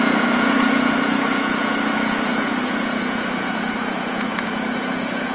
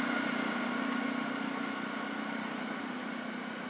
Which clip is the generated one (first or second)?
first